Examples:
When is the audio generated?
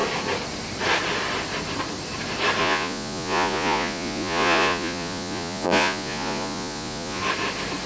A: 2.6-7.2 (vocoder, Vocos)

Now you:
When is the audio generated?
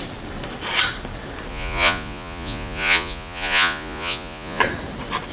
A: 1.5-4.6 (vocoder, Vocos)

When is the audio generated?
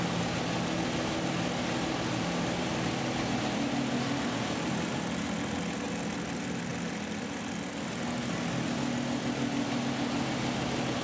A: none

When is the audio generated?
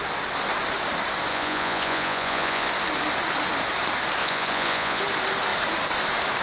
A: 1.3-2.7 (vocoder, Vocos); 4.2-5.0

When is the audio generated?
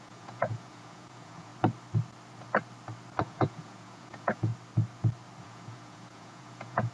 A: 0.0-1.5 (vocoder, Vocos); 3.2-4.5; 5.4-6.9